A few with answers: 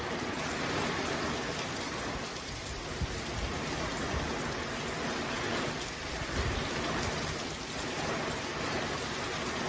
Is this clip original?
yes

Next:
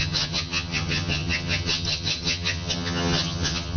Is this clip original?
no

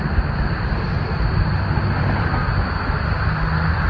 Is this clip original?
yes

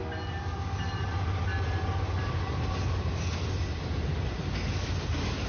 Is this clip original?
yes